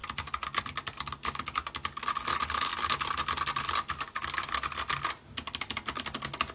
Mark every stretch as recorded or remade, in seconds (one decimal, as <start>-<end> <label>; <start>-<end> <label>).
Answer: 0.0-6.5 recorded